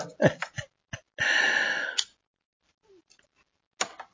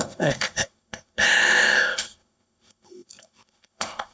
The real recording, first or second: first